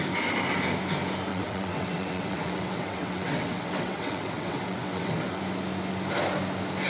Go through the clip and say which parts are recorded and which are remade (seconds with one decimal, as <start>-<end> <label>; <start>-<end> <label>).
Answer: 0.0-1.3 recorded; 1.3-5.4 remade; 5.4-6.9 recorded